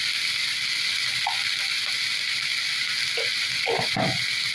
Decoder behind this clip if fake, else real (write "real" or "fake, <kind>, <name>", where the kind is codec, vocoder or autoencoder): real